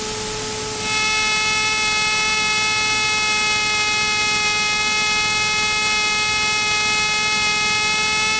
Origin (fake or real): real